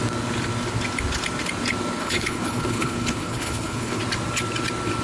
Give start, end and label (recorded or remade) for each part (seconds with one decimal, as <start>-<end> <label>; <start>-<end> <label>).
0.0-2.0 recorded; 2.0-4.0 remade; 4.0-5.0 recorded